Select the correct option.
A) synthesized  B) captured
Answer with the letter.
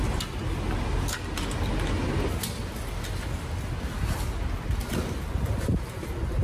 B